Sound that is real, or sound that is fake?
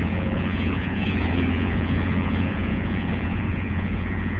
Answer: fake